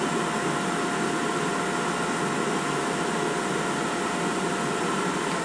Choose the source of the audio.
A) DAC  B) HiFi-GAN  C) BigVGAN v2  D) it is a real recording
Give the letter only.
D